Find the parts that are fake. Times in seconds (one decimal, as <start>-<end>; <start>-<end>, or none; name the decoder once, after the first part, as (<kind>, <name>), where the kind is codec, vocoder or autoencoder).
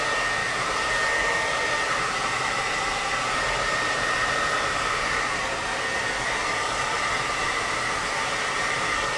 0.4-2.8 (vocoder, BigVGAN v2)